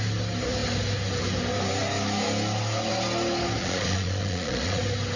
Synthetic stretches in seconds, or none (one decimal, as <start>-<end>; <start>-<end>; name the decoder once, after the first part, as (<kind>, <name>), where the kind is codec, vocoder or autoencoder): 3.6-4.8 (vocoder, Vocos)

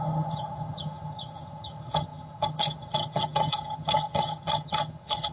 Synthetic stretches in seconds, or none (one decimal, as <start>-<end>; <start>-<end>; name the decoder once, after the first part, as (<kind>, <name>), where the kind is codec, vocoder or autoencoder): 0.0-5.3 (vocoder, HiFi-GAN)

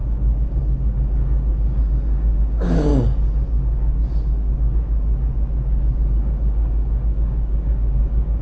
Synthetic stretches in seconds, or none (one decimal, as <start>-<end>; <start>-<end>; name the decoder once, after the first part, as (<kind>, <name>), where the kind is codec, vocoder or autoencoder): 0.0-2.9 (codec, DAC); 6.1-8.4

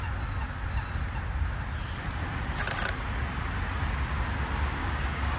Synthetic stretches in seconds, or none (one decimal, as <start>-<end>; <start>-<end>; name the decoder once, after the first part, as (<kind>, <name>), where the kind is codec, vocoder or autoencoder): 4.8-5.4 (codec, DAC)

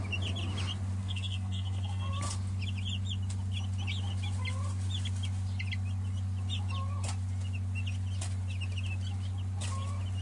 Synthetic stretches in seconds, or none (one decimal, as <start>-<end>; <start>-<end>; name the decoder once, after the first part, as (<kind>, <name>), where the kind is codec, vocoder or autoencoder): 1.0-2.1 (codec, SNAC)

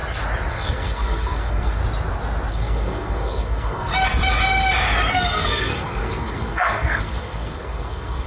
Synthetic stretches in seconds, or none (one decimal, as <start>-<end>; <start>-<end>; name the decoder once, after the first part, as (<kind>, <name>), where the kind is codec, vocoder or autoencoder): 0.5-1.8 (codec, SNAC); 2.5-3.9; 5.1-8.3

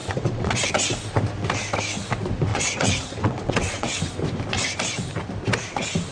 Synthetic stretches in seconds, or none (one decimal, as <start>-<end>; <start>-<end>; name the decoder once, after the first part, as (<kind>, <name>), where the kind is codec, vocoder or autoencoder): 0.0-0.7 (vocoder, WaveNeXt); 2.5-4.0

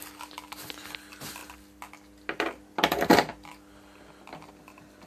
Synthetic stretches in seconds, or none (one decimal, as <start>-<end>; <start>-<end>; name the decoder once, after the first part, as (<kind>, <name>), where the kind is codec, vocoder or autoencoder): none